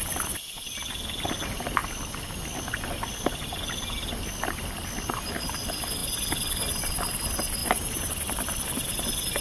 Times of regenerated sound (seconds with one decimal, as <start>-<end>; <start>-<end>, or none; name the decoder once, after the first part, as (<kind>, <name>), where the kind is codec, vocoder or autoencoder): 7.6-8.1 (vocoder, BigVGAN v2)